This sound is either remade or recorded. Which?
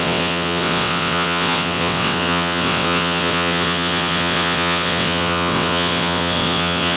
remade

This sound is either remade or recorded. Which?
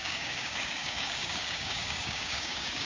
remade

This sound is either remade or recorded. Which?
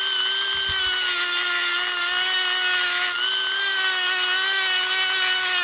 recorded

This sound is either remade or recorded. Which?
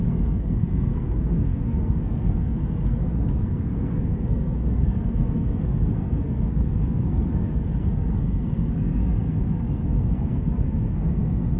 remade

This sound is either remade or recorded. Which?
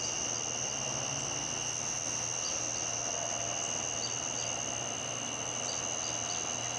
recorded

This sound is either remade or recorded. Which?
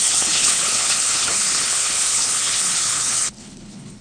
remade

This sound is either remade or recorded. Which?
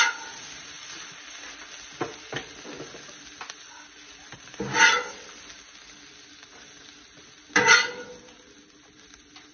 recorded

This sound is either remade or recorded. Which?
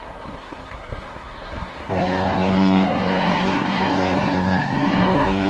remade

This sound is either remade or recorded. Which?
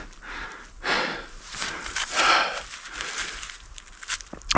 recorded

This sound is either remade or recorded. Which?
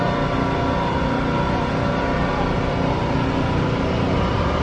recorded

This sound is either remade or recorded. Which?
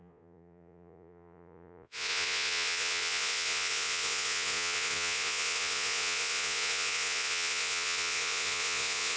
remade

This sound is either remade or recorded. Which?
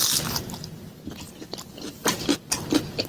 recorded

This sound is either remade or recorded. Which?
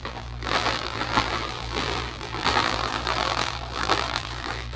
remade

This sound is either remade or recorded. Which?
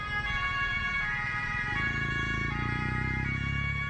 recorded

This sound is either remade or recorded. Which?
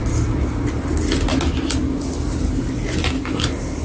recorded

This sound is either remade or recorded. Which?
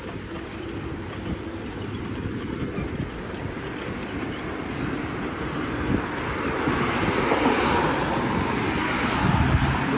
recorded